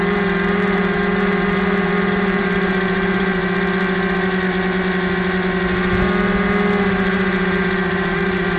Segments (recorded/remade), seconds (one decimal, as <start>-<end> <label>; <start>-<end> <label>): 0.0-3.4 remade; 3.4-6.9 recorded; 6.9-8.6 remade